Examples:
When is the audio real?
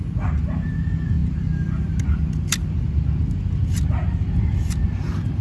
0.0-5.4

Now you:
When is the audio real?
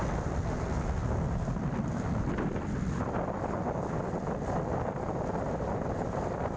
0.0-6.6